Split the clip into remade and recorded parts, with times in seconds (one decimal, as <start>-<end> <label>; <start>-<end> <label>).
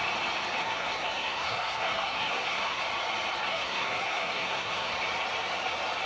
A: 0.0-0.6 recorded; 0.6-2.8 remade; 2.8-3.4 recorded; 3.4-4.9 remade; 4.9-6.1 recorded